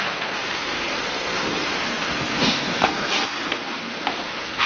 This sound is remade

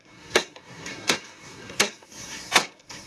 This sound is remade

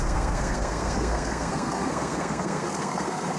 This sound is remade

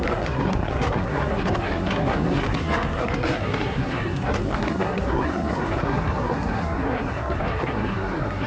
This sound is remade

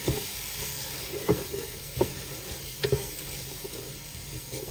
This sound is remade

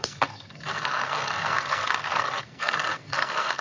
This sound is remade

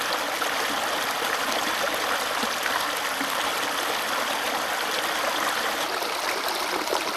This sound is recorded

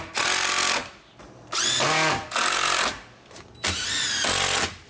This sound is recorded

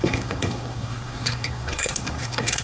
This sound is remade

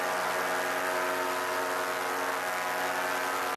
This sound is recorded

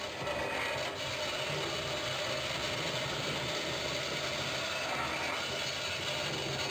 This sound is recorded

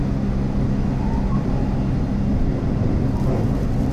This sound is recorded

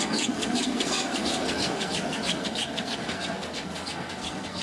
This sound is remade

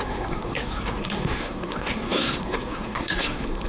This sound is remade